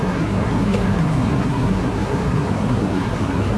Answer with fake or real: fake